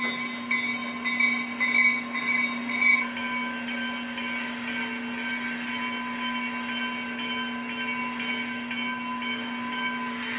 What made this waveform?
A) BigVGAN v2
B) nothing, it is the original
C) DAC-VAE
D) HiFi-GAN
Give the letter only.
B